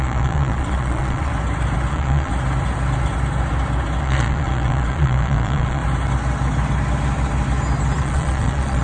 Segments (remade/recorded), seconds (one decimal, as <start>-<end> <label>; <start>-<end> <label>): 0.0-1.3 remade; 1.3-1.9 recorded; 1.9-2.3 remade; 2.3-4.0 recorded; 4.0-5.8 remade; 5.8-8.0 recorded; 8.0-8.8 remade